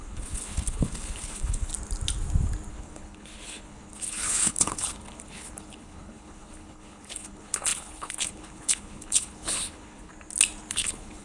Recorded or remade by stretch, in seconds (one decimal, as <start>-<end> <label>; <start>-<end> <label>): 0.0-1.7 remade; 1.7-2.7 recorded; 2.7-10.1 remade; 10.1-10.7 recorded; 10.7-11.2 remade